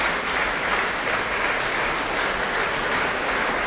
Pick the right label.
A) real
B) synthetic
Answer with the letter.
A